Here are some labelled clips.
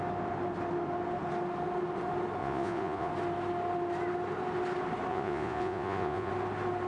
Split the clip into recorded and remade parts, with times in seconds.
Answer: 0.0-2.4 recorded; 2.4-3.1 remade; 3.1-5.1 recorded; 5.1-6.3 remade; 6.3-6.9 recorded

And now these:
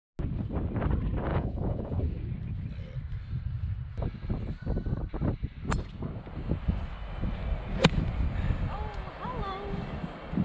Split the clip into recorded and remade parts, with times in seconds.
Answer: 0.0-1.3 recorded; 1.3-2.0 remade; 2.0-10.4 recorded

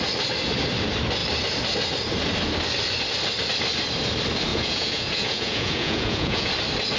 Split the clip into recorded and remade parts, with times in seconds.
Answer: 0.0-4.5 recorded; 4.5-6.5 remade; 6.5-7.0 recorded

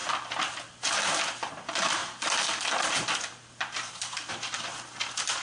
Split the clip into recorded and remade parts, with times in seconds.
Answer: 0.0-5.4 recorded

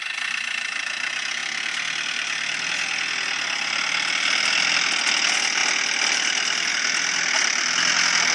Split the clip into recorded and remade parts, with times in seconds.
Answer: 0.0-8.3 recorded